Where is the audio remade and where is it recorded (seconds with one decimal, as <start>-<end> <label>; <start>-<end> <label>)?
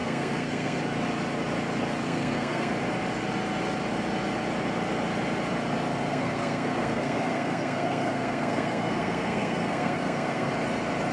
0.0-0.8 remade; 0.8-2.0 recorded; 2.0-2.7 remade; 2.7-6.1 recorded; 6.1-10.5 remade; 10.5-11.1 recorded